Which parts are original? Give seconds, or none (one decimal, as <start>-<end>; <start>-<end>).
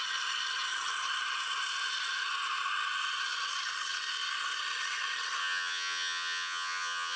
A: 0.0-5.4